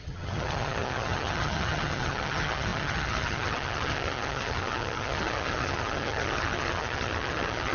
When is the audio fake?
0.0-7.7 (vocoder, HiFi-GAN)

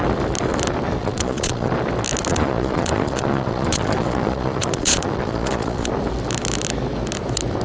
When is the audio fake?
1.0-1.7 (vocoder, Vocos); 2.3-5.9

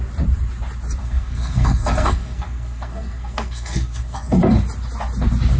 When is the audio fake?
1.0-4.4 (codec, SNAC)